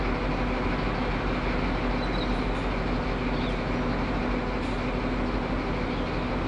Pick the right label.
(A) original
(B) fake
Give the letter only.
A